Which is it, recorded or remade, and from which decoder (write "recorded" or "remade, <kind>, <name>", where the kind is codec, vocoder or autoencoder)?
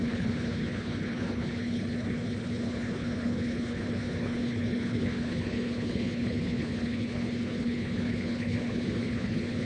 remade, codec, HILCodec